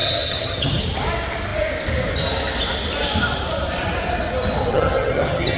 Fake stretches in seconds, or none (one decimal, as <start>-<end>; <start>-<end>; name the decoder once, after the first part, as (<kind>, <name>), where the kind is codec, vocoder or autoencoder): 0.0-0.8 (vocoder, HiFi-GAN); 4.7-5.6